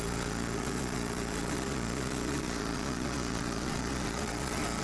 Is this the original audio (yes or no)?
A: no